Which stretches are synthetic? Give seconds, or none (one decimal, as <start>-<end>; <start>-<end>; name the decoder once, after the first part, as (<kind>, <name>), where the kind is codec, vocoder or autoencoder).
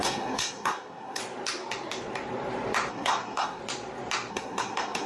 0.0-1.2 (codec, SNAC); 2.9-3.6; 4.3-5.1